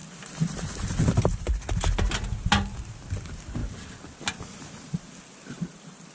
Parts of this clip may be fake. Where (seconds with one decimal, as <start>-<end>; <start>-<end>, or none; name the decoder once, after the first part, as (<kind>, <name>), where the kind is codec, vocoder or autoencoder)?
0.0-1.2 (vocoder, BigVGAN v2)

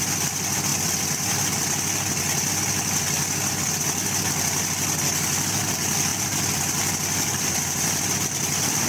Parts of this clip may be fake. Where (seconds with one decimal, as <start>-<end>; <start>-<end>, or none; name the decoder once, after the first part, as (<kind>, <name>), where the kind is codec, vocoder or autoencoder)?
0.7-1.3 (vocoder, BigVGAN v2); 6.1-8.0